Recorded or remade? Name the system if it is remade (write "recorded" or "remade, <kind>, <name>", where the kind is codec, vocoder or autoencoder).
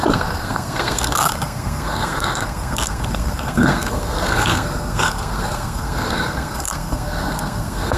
remade, codec, SNAC